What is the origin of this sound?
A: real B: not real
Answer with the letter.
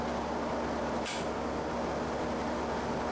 A